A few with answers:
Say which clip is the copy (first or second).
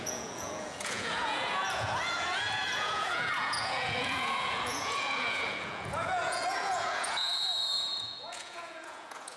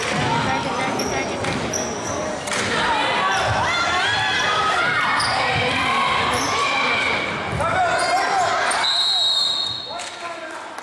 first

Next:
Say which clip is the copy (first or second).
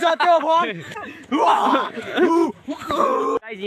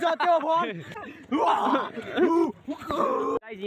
first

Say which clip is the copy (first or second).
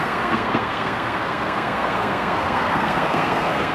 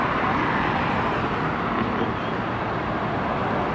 first